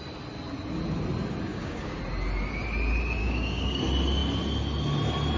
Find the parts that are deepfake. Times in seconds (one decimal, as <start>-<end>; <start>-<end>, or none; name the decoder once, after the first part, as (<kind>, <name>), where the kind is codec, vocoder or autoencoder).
1.5-2.0 (codec, DAC); 3.2-3.8